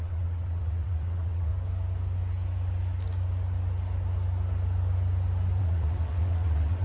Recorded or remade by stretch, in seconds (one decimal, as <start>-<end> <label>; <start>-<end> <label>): 0.0-1.5 remade; 1.5-5.6 recorded; 5.6-6.8 remade